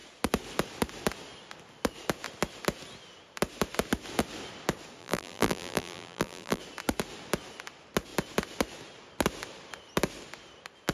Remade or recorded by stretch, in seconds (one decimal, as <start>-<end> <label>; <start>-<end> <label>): 0.0-5.0 recorded; 5.0-6.6 remade; 6.6-10.9 recorded